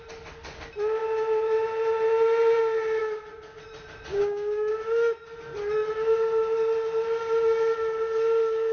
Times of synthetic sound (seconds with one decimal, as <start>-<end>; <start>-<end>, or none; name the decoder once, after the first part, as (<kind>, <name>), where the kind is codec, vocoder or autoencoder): 4.1-4.7 (codec, DAC)